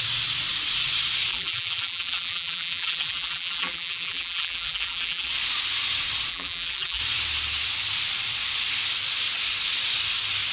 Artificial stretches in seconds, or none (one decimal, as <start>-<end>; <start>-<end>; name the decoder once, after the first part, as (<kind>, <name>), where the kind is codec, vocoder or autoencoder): 1.3-5.3 (vocoder, BigVGAN v2); 6.3-7.0